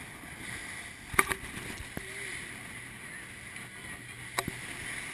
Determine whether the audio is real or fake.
real